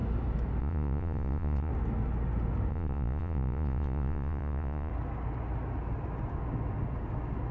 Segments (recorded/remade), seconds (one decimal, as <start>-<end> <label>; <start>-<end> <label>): 0.0-0.6 recorded; 0.6-1.7 remade; 1.7-2.7 recorded; 2.7-4.9 remade; 4.9-7.5 recorded